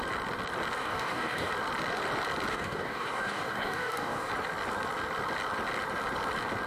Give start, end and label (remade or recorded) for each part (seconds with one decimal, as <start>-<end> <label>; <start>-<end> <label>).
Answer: 0.0-0.8 recorded; 0.8-1.5 remade; 1.5-2.5 recorded; 2.5-4.3 remade; 4.3-6.7 recorded